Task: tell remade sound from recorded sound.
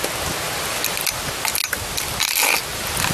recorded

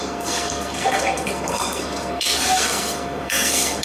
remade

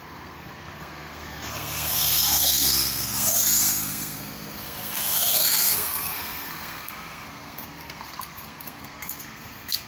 remade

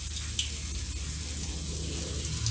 recorded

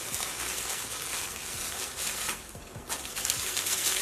remade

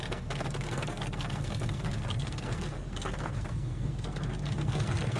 remade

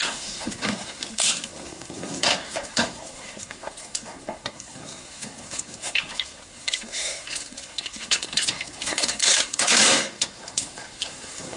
remade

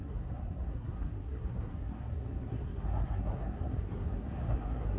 remade